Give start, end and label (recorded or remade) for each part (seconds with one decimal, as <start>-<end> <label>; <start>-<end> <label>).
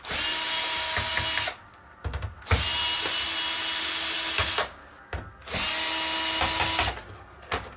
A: 0.0-7.8 recorded